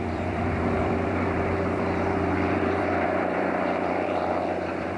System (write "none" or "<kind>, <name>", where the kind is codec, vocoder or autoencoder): vocoder, BigVGAN v2